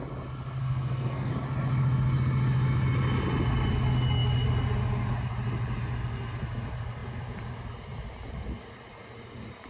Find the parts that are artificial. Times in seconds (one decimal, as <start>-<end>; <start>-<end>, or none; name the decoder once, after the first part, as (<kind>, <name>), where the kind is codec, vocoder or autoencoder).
0.6-1.3 (codec, SNAC)